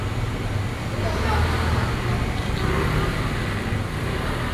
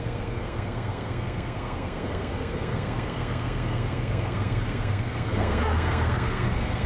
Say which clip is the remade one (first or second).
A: second